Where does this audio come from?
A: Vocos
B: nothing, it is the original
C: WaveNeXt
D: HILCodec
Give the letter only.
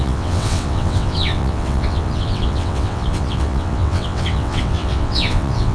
C